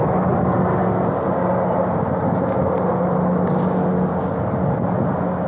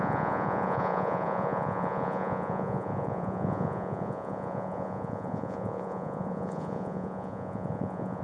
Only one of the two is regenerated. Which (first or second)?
second